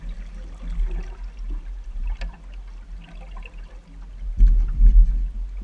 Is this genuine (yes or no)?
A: yes